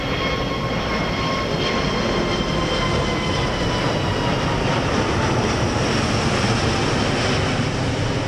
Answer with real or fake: real